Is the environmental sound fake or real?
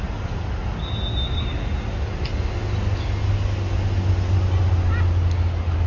real